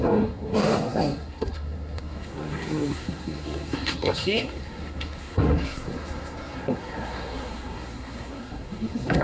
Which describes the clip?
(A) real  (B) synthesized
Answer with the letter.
B